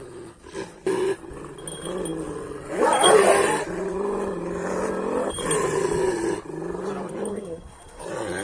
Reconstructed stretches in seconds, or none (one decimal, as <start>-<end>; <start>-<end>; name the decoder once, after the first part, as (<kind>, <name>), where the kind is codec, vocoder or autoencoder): 7.3-8.0 (codec, SNAC)

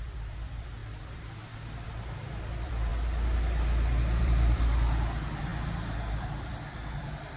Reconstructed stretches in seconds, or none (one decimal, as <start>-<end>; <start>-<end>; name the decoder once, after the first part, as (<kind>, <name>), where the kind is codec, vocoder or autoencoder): 0.0-2.9 (vocoder, BigVGAN v2); 4.2-5.5; 6.1-7.4